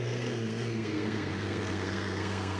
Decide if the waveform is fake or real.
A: fake